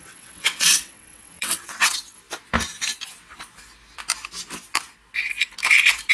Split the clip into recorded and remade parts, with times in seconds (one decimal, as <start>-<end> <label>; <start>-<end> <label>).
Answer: 0.0-2.2 remade; 2.2-6.1 recorded